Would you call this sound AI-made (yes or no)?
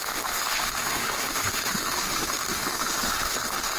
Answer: yes